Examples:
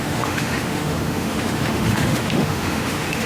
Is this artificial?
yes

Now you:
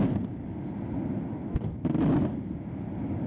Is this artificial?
no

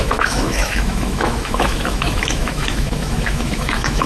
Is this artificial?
yes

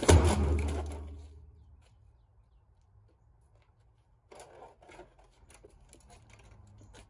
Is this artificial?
no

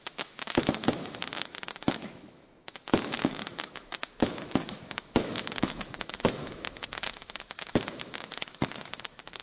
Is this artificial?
yes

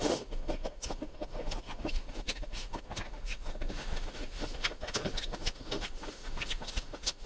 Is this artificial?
yes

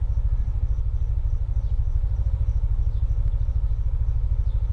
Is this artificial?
no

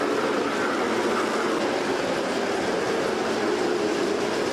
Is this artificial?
no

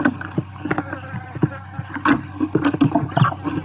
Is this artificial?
no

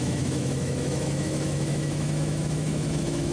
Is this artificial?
yes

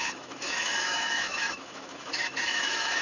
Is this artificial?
yes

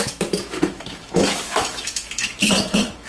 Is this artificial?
yes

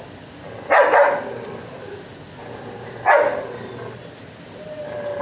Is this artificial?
no